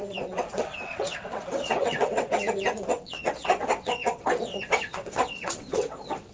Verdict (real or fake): fake